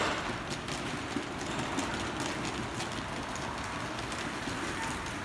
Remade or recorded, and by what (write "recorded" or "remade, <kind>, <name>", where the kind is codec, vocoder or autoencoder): recorded